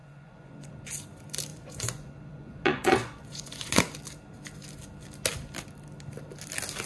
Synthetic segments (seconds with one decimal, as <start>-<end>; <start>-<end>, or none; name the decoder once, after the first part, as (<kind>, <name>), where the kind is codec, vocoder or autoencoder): 0.0-0.7 (vocoder, Vocos); 1.5-3.9